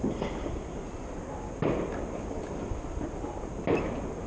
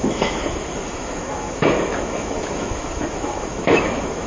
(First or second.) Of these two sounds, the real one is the first